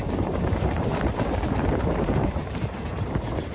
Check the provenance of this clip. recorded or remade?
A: remade